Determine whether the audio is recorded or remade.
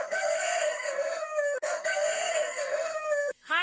remade